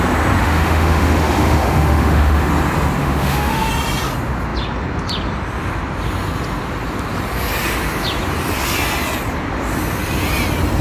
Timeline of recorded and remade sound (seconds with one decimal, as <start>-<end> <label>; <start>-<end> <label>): 0.0-0.4 recorded; 0.4-2.5 remade; 2.5-3.0 recorded; 3.0-3.7 remade; 3.7-10.8 recorded

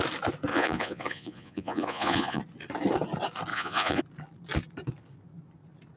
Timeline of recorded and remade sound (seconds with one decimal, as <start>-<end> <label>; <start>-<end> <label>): 0.0-0.5 recorded; 0.5-2.4 remade; 2.4-3.5 recorded; 3.5-4.0 remade; 4.0-6.0 recorded

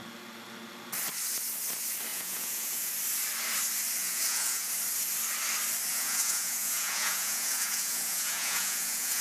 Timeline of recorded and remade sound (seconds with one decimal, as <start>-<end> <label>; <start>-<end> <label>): 0.0-2.1 recorded; 2.1-2.9 remade; 2.9-4.0 recorded; 4.0-4.7 remade; 4.7-5.9 recorded; 5.9-9.2 remade